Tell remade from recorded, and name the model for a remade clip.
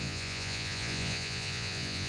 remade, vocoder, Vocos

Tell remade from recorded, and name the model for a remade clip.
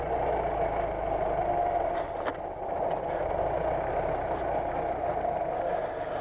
recorded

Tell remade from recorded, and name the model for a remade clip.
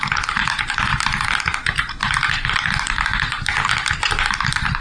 recorded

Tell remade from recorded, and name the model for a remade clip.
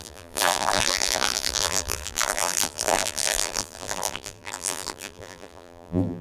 remade, vocoder, BigVGAN v2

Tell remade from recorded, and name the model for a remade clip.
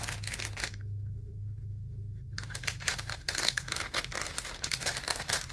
remade, autoencoder, DAC-VAE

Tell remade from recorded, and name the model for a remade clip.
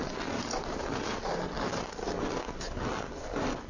recorded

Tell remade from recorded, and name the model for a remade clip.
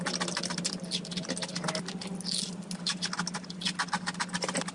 recorded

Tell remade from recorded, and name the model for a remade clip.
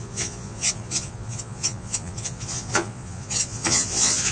remade, vocoder, Vocos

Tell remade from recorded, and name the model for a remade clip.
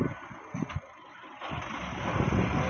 recorded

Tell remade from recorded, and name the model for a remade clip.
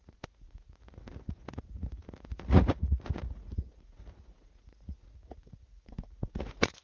remade, vocoder, Vocos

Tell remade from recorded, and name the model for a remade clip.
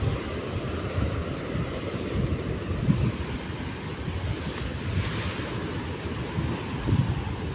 recorded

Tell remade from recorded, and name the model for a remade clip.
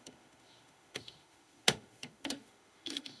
remade, autoencoder, DAC-VAE